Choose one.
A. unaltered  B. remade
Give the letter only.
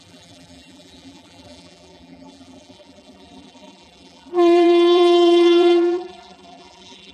B